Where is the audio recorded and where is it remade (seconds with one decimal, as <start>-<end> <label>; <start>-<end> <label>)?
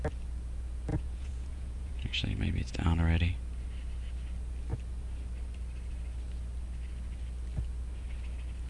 0.0-0.9 recorded; 0.9-2.7 remade; 2.7-8.7 recorded